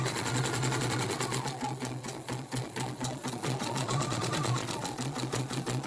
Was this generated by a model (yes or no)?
yes